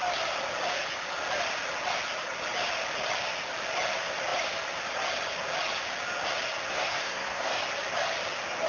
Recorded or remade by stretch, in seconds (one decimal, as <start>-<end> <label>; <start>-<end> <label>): 0.0-6.7 recorded; 6.7-7.6 remade; 7.6-8.7 recorded